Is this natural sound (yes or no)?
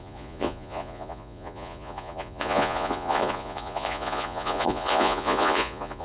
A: no